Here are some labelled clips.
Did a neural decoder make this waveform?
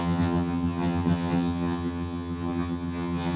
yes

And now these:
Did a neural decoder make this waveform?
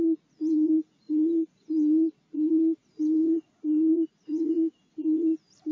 yes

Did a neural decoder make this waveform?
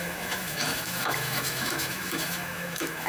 yes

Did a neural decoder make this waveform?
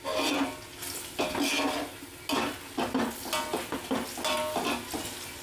no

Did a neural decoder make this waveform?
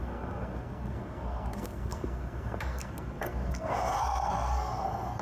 yes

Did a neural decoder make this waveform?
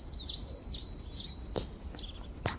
no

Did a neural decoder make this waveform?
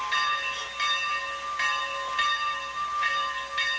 no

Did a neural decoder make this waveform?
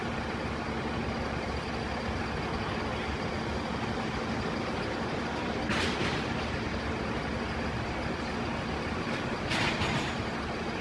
no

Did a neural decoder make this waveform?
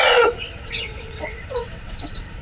yes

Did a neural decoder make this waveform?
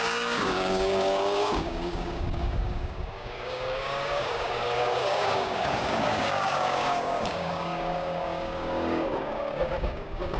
yes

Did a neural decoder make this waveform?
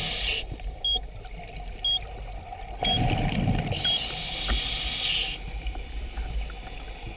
no